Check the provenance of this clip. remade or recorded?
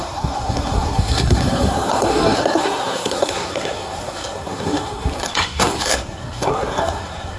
remade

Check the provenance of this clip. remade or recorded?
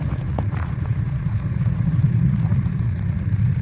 remade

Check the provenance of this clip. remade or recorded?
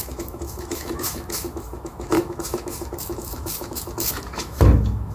remade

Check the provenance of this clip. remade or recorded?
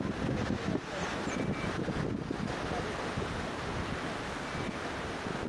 recorded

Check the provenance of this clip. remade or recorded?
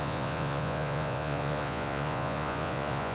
remade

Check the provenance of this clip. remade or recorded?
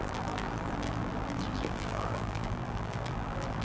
remade